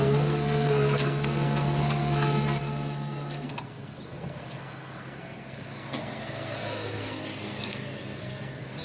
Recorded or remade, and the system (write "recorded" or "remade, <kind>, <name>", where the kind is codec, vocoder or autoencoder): remade, codec, SNAC